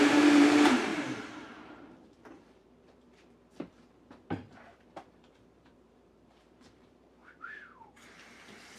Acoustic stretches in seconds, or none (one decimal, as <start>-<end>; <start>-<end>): none